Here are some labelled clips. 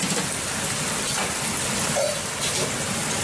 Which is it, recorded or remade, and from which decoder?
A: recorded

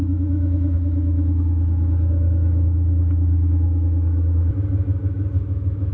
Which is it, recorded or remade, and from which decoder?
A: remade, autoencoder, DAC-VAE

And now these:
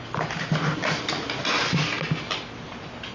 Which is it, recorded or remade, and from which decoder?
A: recorded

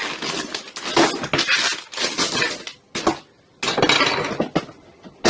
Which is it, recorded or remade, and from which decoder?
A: recorded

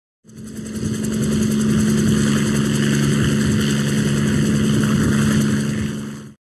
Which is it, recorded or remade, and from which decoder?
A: recorded